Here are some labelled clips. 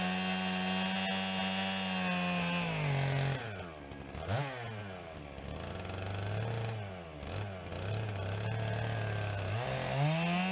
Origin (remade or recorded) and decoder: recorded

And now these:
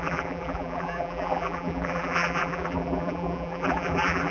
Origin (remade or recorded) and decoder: remade, vocoder, BigVGAN v2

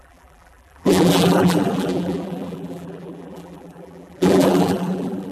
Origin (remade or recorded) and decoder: remade, vocoder, BigVGAN v2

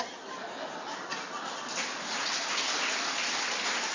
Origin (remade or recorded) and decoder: recorded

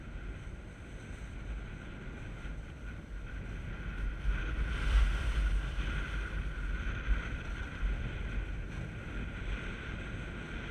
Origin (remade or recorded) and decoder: recorded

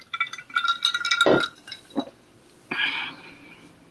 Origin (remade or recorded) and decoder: recorded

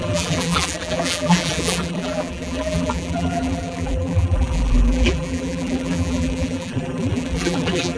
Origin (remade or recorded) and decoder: remade, vocoder, BigVGAN v2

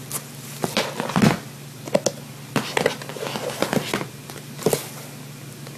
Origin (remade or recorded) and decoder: recorded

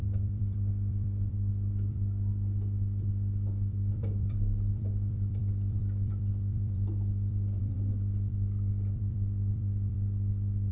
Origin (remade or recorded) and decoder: remade, vocoder, BigVGAN v2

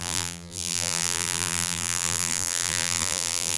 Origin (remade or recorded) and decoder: remade, vocoder, BigVGAN v2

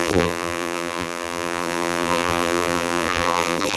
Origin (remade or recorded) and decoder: remade, vocoder, BigVGAN v2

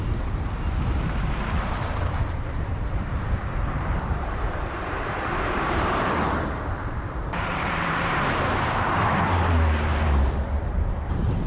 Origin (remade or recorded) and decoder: remade, vocoder, BigVGAN v2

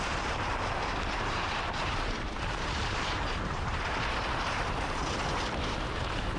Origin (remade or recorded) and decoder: remade, vocoder, BigVGAN v2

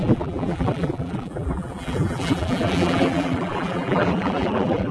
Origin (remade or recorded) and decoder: remade, vocoder, BigVGAN v2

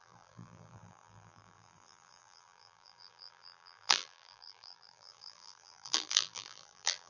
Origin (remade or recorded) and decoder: remade, vocoder, BigVGAN v2